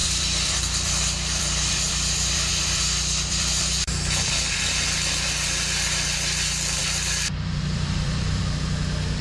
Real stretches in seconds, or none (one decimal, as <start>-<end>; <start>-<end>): 4.6-6.8; 8.4-9.2